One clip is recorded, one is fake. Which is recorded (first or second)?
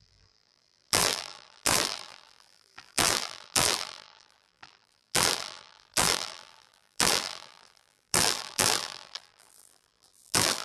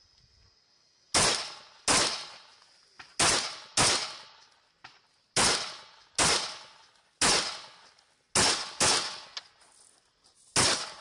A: second